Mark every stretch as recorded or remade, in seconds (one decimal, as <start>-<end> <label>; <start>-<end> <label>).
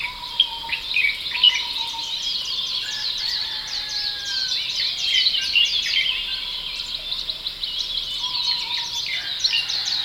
0.0-2.0 recorded; 2.0-4.6 remade; 4.6-10.0 recorded